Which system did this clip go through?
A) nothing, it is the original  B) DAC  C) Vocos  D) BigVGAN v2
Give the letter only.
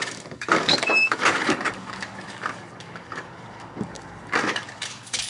B